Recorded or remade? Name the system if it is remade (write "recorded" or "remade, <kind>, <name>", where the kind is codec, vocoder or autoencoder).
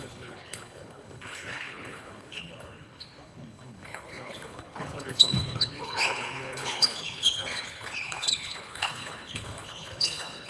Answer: remade, codec, HILCodec